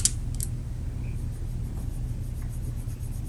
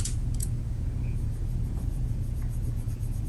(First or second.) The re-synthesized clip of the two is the second